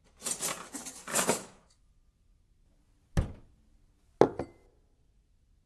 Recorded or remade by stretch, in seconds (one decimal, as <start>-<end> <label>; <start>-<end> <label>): 0.0-1.1 recorded; 1.1-1.9 remade; 1.9-5.7 recorded